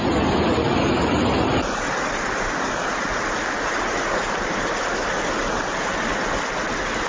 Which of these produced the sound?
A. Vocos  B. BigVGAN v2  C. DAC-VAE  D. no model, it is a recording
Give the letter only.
D